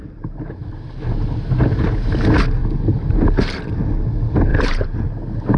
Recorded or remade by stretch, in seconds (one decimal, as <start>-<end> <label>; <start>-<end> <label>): 0.0-4.5 recorded; 4.5-5.1 remade; 5.1-5.6 recorded

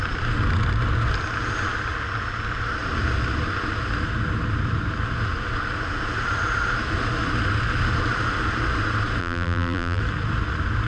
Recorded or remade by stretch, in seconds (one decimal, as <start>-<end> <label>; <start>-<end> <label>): 0.0-9.2 recorded; 9.2-10.0 remade; 10.0-10.9 recorded

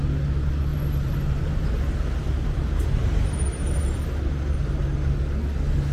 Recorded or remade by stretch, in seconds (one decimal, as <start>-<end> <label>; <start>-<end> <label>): 0.0-0.7 recorded; 0.7-4.2 remade; 4.2-5.9 recorded

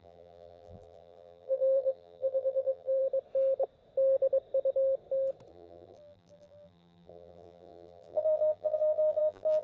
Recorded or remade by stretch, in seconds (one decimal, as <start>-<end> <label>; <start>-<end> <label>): 0.0-3.0 remade; 3.0-5.5 recorded; 5.5-9.6 remade

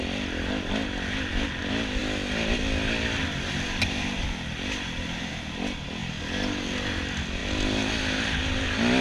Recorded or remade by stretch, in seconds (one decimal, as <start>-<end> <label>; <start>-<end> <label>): 0.0-9.0 recorded

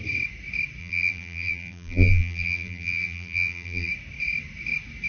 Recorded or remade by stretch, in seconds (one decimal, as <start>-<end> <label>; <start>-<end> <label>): 0.0-0.8 recorded; 0.8-3.9 remade; 3.9-5.1 recorded